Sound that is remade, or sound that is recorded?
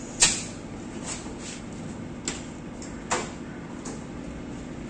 recorded